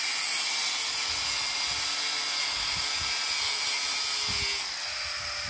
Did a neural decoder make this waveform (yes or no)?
no